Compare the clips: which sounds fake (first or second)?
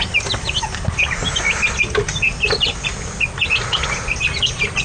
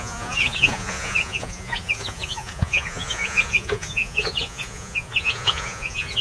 second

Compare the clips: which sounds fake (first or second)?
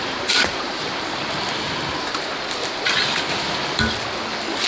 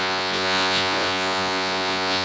second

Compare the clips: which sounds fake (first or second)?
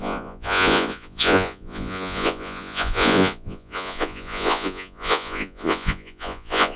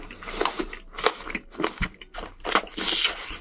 first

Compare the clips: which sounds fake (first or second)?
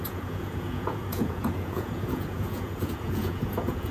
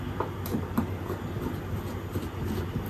first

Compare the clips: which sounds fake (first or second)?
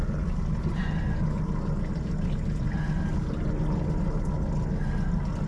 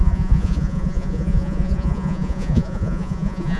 second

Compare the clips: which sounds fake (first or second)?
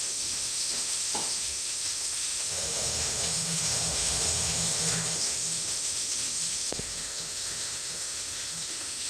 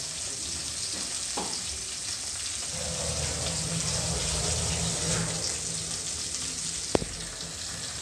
first